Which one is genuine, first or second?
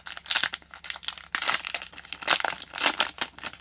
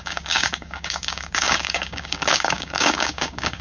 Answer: first